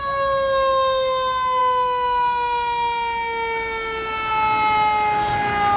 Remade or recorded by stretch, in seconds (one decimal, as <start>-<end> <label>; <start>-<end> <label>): 0.0-5.8 recorded